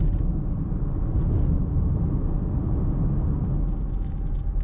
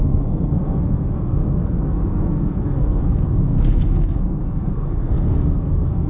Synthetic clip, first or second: second